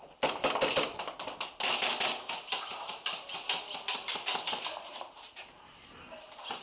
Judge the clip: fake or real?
real